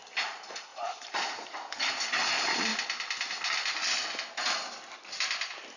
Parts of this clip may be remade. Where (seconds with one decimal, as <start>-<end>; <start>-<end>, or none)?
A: 0.7-1.9